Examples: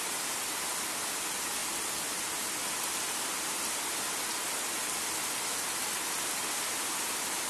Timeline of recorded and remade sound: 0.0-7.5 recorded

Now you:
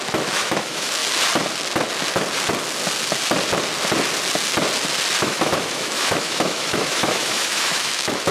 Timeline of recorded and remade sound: 0.0-1.0 remade; 1.0-5.2 recorded; 5.2-8.3 remade

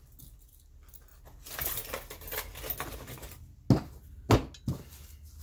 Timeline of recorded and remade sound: 0.0-5.4 recorded

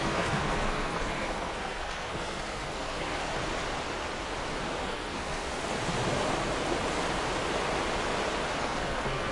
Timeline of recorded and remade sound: 0.0-3.3 remade; 3.3-4.8 recorded; 4.8-5.5 remade; 5.5-8.6 recorded; 8.6-9.3 remade

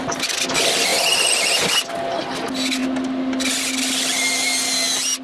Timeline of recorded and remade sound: 0.0-5.2 recorded

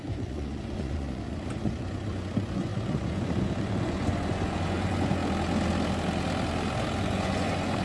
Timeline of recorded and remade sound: 0.0-5.2 remade; 5.2-7.0 recorded; 7.0-7.8 remade

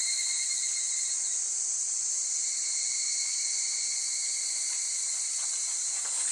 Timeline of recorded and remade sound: 0.0-6.3 recorded

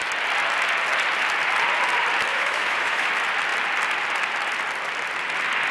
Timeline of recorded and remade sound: 0.0-2.3 recorded; 2.3-3.1 remade; 3.1-5.7 recorded